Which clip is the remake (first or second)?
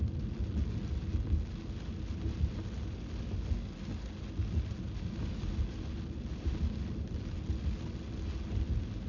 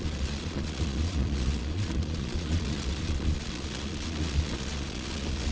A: second